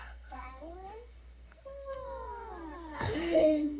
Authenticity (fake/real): fake